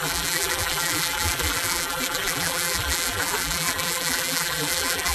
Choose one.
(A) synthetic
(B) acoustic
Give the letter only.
A